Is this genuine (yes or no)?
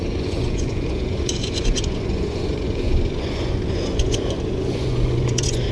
no